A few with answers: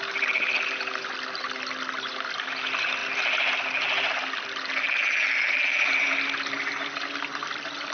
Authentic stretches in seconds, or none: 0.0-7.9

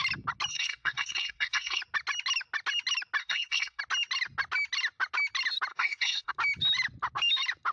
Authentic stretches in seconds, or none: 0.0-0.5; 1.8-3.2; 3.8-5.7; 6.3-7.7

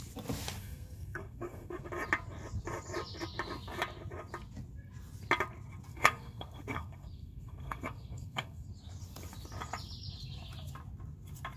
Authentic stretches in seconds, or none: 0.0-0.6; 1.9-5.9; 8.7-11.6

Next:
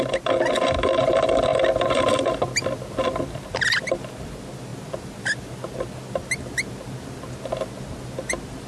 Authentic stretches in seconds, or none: 0.0-8.7

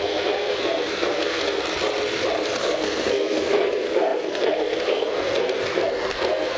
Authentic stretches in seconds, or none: 1.6-2.6

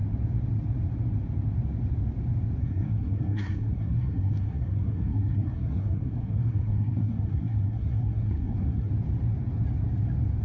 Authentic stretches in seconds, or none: 0.0-2.6; 8.9-10.4